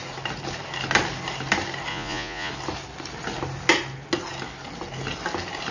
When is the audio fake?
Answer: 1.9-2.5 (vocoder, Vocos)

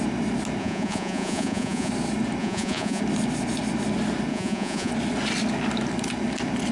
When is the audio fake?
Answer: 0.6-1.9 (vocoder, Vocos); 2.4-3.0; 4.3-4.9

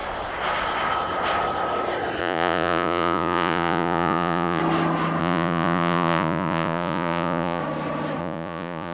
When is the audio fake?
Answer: 2.2-4.6 (vocoder, Vocos); 5.2-7.6; 8.2-8.9